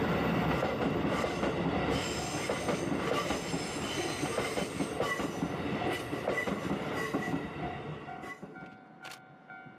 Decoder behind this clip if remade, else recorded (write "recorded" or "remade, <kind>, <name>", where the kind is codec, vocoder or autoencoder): recorded